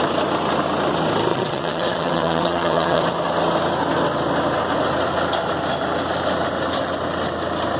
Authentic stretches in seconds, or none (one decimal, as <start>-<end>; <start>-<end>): 0.0-1.3; 3.0-7.8